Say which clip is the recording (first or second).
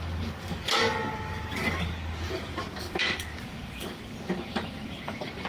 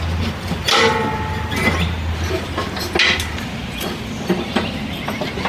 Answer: second